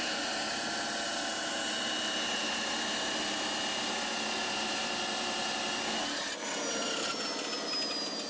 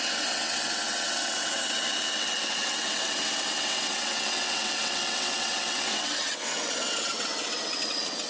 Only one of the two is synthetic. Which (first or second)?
second